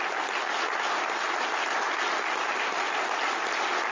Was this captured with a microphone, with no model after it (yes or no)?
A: yes